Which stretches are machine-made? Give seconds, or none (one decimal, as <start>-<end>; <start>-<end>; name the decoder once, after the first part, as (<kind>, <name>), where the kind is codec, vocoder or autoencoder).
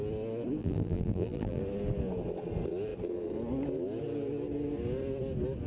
0.6-1.6 (vocoder, BigVGAN v2)